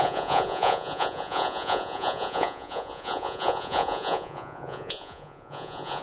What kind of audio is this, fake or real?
fake